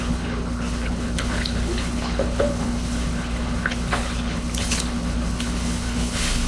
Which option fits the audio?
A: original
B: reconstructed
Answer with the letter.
B